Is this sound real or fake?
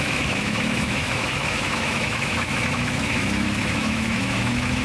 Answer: fake